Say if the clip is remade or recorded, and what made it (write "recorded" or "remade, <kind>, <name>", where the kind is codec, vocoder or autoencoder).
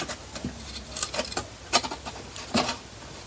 recorded